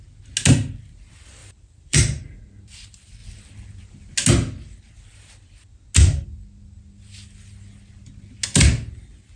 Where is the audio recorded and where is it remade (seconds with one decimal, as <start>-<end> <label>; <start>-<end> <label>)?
0.0-1.4 recorded; 1.4-2.4 remade; 2.4-9.4 recorded